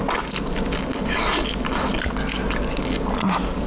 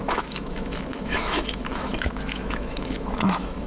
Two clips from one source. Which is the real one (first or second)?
first